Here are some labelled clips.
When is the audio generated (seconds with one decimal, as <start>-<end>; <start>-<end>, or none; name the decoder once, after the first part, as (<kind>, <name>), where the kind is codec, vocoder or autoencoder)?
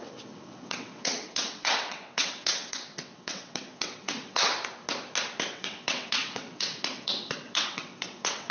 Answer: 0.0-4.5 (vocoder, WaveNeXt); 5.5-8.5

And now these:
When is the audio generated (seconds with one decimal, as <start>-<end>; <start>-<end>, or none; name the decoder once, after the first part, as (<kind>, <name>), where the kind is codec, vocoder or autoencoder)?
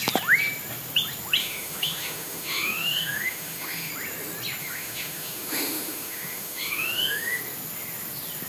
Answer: 1.4-3.9 (autoencoder, DAC-VAE); 4.6-7.4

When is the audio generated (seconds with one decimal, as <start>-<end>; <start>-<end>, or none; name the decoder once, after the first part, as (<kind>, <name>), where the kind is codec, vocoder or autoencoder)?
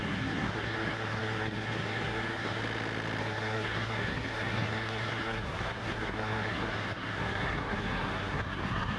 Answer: 0.0-2.6 (codec, SNAC); 3.2-9.0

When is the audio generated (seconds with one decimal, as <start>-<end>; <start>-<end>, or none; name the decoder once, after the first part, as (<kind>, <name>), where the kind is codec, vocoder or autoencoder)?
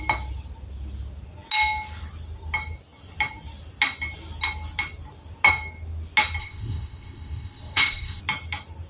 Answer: 6.4-8.2 (codec, ZipCodec)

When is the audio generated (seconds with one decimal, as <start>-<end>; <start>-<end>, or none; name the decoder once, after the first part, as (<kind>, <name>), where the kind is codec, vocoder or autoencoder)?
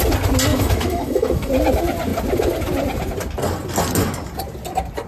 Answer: 0.5-1.5 (autoencoder, DAC-VAE)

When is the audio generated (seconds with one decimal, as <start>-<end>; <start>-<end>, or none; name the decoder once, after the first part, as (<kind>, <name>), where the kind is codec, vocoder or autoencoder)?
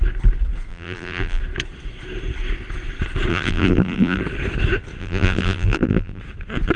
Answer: 0.7-1.4 (vocoder, BigVGAN v2); 3.3-4.2; 5.0-6.2